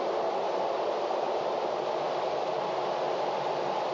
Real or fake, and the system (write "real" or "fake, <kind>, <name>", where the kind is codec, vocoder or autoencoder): real